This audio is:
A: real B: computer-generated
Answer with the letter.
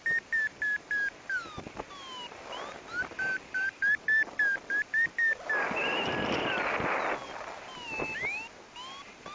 A